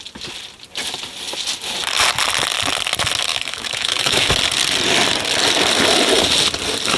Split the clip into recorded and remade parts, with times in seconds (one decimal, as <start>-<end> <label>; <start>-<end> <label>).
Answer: 0.0-3.3 recorded; 3.3-4.3 remade; 4.3-7.0 recorded